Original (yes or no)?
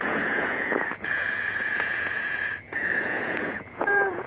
no